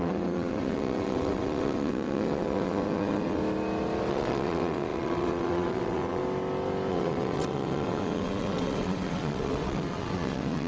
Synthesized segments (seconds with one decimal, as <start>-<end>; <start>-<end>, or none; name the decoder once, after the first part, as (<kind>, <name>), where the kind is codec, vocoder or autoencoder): 0.0-3.4 (vocoder, WaveNeXt); 4.1-6.2; 6.9-10.7

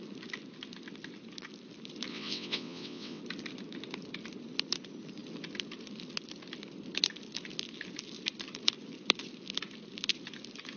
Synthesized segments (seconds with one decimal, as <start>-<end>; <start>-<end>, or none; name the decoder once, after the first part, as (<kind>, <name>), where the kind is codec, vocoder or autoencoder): 2.1-3.2 (vocoder, WaveNeXt)

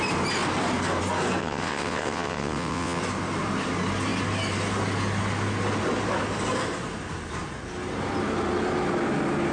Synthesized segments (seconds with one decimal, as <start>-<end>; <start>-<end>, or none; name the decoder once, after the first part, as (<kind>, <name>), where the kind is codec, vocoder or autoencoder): 1.4-3.0 (vocoder, WaveNeXt)

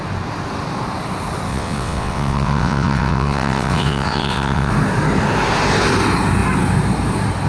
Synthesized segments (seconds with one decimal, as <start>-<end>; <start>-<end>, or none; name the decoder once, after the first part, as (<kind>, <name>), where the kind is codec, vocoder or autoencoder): 1.5-4.7 (vocoder, WaveNeXt)

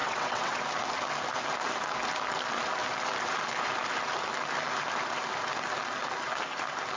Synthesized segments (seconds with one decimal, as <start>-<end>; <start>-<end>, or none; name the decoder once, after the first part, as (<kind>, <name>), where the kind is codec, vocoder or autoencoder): 0.0-0.6 (vocoder, WaveNeXt)

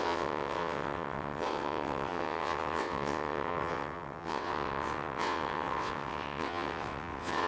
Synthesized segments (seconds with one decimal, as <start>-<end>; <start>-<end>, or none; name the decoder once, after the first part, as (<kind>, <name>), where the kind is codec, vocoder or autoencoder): 0.0-7.5 (vocoder, WaveNeXt)

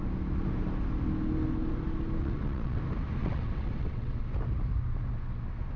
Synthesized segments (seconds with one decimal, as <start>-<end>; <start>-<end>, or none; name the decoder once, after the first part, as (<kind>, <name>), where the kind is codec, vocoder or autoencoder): 2.2-2.8 (vocoder, WaveNeXt); 3.2-4.2